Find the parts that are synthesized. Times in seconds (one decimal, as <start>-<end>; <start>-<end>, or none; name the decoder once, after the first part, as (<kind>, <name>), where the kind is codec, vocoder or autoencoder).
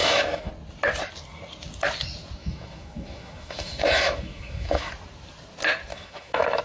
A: 0.0-0.5 (autoencoder, DAC-VAE); 2.4-4.9; 5.9-6.6